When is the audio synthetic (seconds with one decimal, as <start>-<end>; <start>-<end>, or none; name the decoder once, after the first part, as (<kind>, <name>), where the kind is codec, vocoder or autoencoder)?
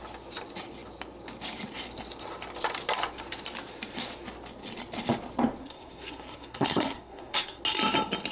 5.6-7.6 (codec, SNAC)